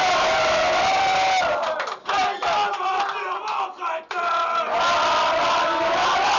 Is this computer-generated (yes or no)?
no